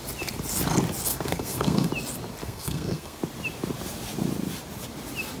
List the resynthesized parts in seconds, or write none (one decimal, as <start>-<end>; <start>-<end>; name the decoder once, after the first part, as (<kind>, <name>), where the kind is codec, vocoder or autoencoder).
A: 1.1-1.9 (codec, SNAC); 2.4-3.2